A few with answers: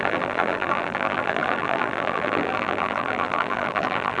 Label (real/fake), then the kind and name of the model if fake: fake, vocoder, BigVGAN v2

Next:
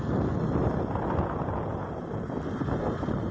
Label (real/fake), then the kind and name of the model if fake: real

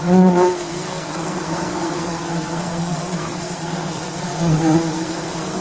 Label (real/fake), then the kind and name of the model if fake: fake, codec, SNAC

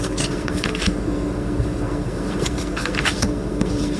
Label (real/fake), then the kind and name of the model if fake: fake, codec, SNAC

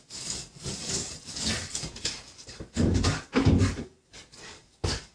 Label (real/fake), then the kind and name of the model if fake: fake, codec, DAC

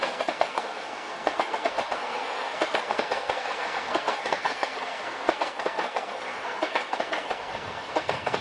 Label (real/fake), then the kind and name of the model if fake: fake, codec, SNAC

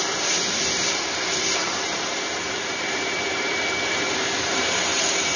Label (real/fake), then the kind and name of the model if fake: fake, vocoder, BigVGAN v2